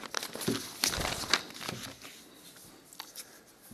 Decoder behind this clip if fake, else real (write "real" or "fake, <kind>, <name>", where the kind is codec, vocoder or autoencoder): real